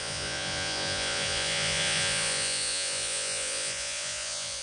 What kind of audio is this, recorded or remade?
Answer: remade